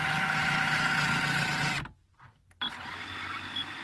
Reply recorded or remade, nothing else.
recorded